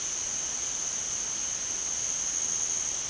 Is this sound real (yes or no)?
yes